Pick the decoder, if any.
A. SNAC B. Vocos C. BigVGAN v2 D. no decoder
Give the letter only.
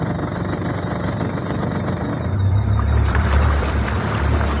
C